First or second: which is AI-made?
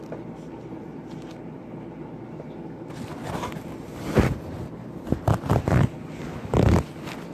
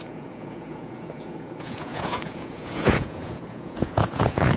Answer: second